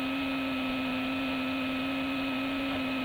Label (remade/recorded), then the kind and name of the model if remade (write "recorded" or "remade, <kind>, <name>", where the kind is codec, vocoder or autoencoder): recorded